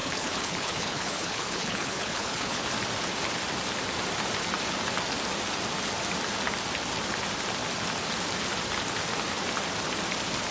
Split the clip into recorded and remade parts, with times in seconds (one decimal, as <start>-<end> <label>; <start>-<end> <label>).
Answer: 0.0-2.6 remade; 2.6-10.5 recorded